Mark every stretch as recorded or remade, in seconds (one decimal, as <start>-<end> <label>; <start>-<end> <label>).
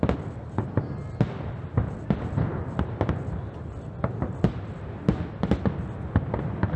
0.0-6.8 recorded